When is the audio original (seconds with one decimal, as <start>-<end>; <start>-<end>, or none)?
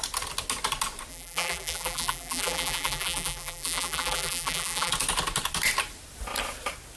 0.0-1.1; 4.9-7.0